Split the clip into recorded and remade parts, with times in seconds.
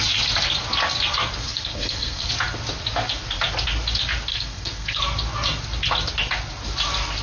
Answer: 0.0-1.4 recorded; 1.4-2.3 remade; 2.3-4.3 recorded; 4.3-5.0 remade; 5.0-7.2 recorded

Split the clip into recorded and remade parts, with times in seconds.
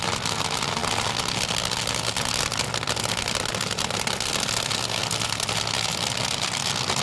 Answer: 0.0-7.0 recorded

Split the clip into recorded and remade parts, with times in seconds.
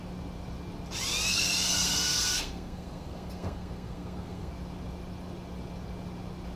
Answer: 0.0-1.3 recorded; 1.3-4.5 remade; 4.5-6.6 recorded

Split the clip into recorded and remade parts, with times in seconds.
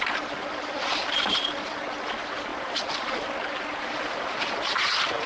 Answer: 0.0-5.3 recorded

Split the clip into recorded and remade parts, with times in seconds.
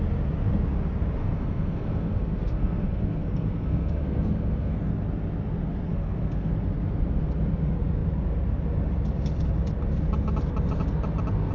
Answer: 0.0-1.2 recorded; 1.2-4.9 remade; 4.9-5.9 recorded; 5.9-6.5 remade; 6.5-11.5 recorded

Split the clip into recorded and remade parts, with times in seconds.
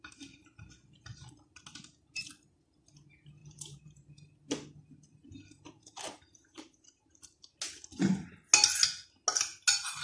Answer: 0.0-3.4 recorded; 3.4-4.3 remade; 4.3-5.2 recorded; 5.2-7.5 remade; 7.5-10.0 recorded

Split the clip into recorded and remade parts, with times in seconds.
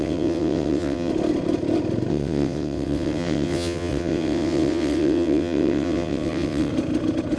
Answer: 0.0-1.1 remade; 1.1-2.1 recorded; 2.1-6.7 remade; 6.7-7.4 recorded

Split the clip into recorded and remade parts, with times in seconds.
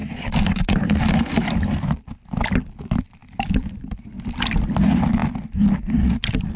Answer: 0.0-6.6 recorded